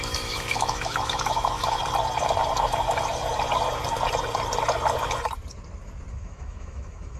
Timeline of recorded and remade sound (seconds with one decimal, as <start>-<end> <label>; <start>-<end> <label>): 0.0-1.8 remade; 1.8-6.1 recorded; 6.1-7.2 remade